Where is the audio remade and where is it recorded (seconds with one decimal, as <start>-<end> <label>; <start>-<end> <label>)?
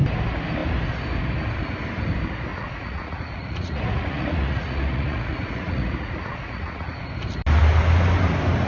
0.0-2.5 recorded; 2.5-7.0 remade; 7.0-8.7 recorded